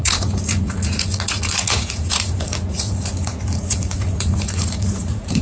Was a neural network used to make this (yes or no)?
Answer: yes